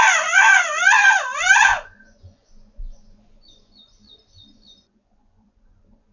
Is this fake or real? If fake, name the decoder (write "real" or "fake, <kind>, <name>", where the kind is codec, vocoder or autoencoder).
fake, vocoder, Vocos